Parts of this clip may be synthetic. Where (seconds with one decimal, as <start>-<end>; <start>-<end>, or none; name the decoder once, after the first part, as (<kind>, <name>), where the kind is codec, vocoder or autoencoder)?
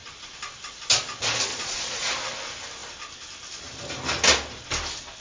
1.5-2.1 (vocoder, Vocos)